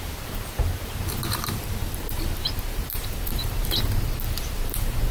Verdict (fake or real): fake